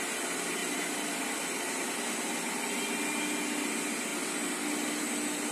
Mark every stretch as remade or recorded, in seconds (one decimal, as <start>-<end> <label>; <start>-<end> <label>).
0.0-5.5 recorded